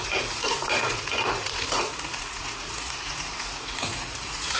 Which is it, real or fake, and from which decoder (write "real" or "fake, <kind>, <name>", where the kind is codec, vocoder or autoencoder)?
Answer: fake, vocoder, Vocos